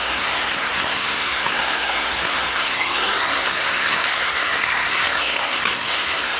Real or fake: fake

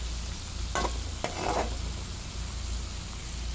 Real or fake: real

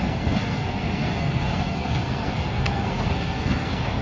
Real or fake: fake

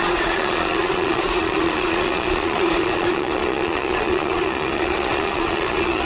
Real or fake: fake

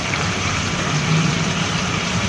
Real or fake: fake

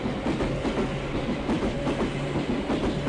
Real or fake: real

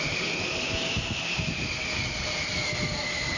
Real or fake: real